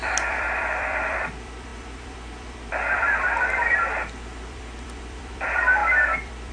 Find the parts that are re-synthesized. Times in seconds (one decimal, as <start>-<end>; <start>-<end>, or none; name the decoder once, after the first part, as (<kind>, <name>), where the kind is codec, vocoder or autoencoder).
0.0-6.5 (vocoder, BigVGAN v2)